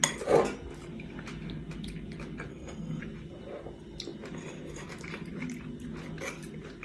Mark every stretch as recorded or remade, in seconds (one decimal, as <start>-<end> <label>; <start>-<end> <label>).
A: 0.0-2.5 recorded; 2.5-3.0 remade; 3.0-6.8 recorded